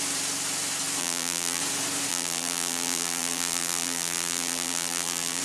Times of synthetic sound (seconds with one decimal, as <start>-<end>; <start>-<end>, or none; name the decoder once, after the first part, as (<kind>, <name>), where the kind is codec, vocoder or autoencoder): 1.0-1.6 (vocoder, BigVGAN v2); 2.1-5.4